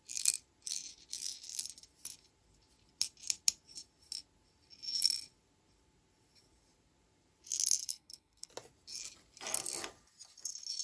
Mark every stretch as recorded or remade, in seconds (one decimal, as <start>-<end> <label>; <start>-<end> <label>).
0.0-7.8 recorded; 7.8-8.5 remade; 8.5-10.8 recorded